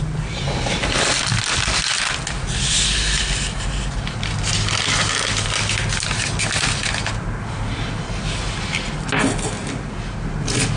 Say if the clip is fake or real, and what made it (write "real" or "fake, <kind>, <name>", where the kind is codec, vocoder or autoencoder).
real